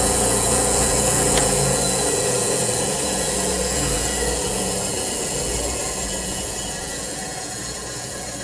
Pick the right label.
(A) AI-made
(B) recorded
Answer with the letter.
A